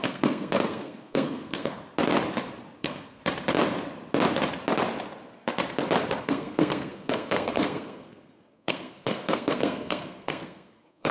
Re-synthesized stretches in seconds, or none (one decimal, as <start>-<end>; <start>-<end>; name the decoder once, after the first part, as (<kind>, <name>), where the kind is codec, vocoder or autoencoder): 0.0-1.7 (codec, SNAC); 2.8-3.2; 6.2-11.1